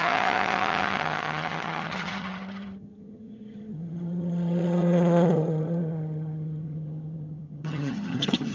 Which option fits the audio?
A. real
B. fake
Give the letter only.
B